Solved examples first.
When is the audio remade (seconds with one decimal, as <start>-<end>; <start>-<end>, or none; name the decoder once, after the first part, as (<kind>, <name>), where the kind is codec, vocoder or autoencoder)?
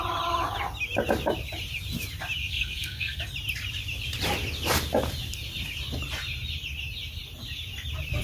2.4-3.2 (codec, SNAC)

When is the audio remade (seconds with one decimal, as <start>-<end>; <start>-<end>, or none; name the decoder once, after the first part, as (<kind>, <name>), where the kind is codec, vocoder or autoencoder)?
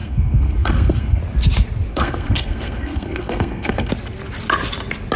0.0-1.2 (codec, SNAC); 1.9-3.9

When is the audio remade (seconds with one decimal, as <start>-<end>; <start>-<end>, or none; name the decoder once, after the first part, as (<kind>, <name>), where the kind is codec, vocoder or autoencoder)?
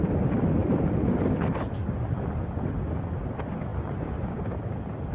none